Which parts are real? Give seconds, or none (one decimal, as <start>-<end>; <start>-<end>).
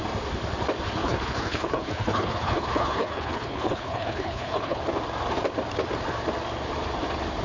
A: 0.0-1.0; 4.8-7.4